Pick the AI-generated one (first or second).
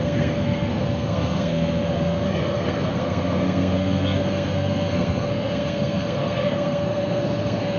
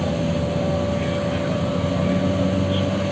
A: first